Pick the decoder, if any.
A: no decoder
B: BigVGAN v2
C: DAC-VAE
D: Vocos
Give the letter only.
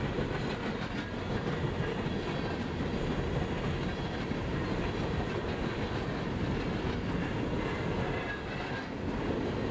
A